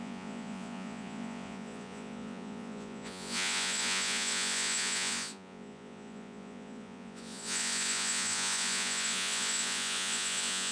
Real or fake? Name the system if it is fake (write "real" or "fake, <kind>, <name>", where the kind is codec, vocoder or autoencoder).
fake, vocoder, Vocos